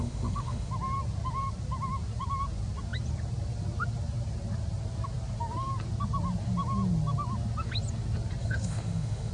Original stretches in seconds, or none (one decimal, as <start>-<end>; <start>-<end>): 0.7-8.4